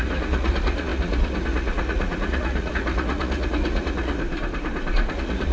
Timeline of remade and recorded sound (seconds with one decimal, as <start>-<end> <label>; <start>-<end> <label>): 0.0-4.2 remade; 4.2-5.1 recorded; 5.1-5.5 remade